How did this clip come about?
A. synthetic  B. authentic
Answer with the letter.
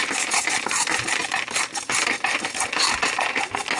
B